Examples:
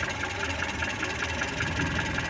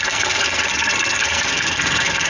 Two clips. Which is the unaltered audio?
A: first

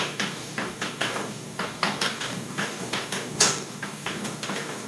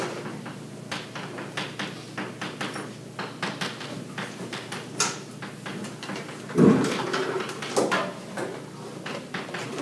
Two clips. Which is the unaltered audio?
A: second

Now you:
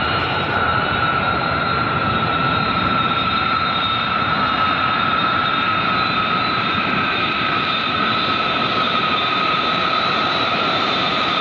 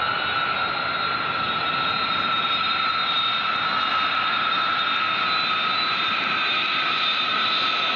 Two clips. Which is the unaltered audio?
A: second